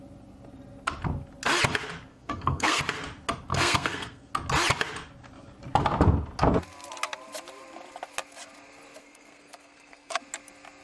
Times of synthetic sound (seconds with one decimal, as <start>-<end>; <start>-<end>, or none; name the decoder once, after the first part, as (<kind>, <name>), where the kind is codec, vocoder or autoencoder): 2.1-2.8 (codec, SNAC); 3.5-4.3; 9.0-10.2